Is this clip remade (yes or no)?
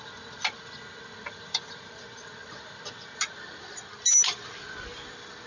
no